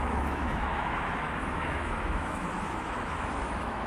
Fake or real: fake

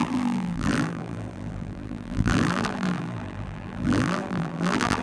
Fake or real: fake